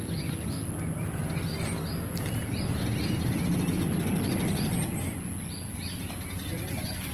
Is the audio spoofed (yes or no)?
no